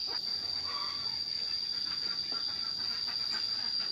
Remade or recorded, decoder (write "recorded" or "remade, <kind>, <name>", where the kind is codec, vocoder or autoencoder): recorded